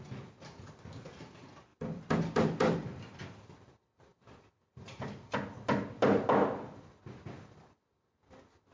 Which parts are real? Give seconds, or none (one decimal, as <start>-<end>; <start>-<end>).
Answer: 0.0-1.7; 3.2-8.7